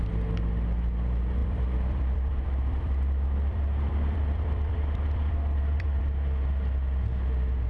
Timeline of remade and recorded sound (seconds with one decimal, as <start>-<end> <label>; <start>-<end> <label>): 0.0-1.4 recorded; 1.4-6.0 remade; 6.0-7.7 recorded